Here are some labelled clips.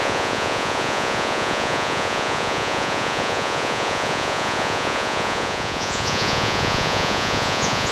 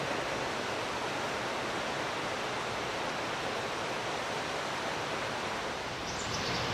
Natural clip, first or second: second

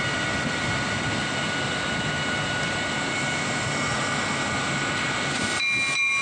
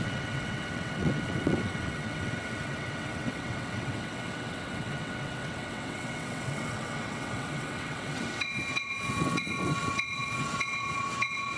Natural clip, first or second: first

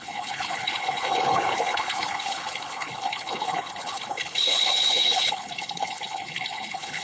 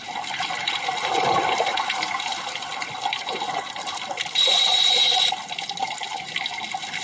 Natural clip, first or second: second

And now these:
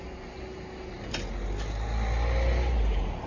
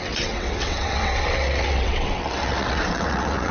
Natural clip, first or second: first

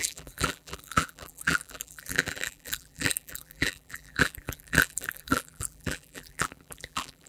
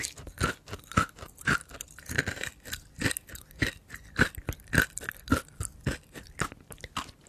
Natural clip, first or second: second